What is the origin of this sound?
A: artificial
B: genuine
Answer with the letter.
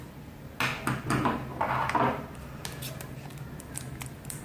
B